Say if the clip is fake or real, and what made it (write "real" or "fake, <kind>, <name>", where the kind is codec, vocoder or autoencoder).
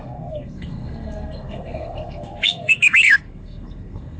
fake, codec, SNAC